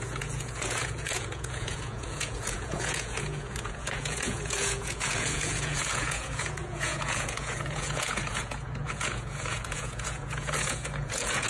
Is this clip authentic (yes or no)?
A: no